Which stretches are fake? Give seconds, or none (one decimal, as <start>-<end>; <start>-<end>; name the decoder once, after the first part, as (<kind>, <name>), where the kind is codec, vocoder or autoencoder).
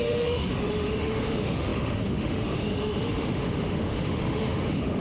0.0-5.0 (autoencoder, DAC-VAE)